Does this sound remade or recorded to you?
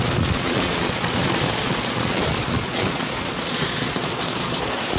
remade